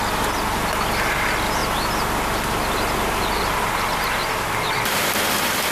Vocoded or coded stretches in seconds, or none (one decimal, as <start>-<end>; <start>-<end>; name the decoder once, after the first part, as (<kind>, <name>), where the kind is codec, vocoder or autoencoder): none